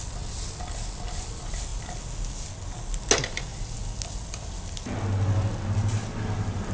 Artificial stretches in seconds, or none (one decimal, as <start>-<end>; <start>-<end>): none

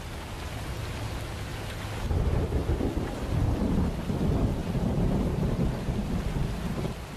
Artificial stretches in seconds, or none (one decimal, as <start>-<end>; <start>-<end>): 4.6-6.4

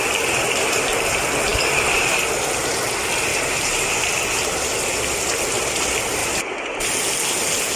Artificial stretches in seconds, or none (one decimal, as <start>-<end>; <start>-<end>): 3.3-4.7; 6.2-6.9